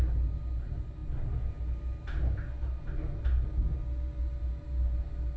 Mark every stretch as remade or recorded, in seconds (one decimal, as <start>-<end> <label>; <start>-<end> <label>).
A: 0.0-5.4 recorded